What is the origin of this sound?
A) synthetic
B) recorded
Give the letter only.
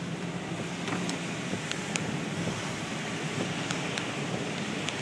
B